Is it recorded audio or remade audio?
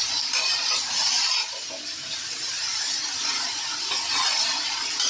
recorded